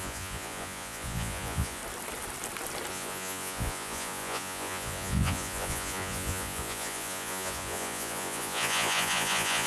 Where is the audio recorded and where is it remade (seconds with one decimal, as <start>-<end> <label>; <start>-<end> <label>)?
0.0-1.8 remade; 1.8-2.9 recorded; 2.9-9.7 remade